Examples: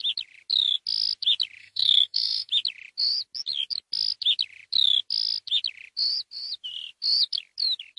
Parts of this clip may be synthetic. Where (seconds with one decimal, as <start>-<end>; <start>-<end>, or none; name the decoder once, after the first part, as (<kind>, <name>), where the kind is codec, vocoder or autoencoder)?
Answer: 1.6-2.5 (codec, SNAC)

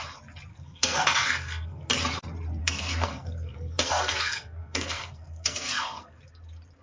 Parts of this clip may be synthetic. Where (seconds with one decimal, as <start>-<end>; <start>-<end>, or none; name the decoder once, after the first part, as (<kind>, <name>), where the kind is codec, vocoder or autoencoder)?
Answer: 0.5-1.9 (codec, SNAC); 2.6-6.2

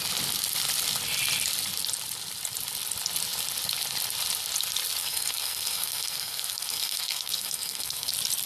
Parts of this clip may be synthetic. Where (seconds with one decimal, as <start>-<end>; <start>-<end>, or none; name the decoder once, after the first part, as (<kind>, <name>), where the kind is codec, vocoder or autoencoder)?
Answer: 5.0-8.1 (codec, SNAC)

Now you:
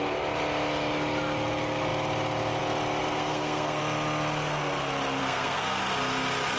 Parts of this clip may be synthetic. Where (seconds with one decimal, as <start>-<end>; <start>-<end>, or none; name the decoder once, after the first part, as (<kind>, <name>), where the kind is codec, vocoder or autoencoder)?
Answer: 3.0-3.8 (codec, SNAC); 5.2-5.8